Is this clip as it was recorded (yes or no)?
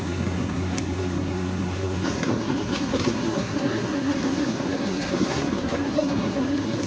no